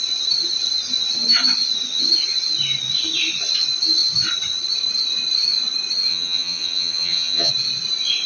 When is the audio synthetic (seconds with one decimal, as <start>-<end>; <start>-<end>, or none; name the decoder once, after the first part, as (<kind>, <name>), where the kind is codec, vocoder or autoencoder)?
6.1-7.5 (vocoder, HiFi-GAN)